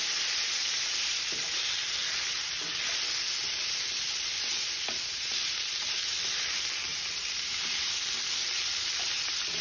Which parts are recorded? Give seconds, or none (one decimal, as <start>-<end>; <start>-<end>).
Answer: 0.0-0.6; 1.6-4.5; 6.1-6.9; 7.9-9.6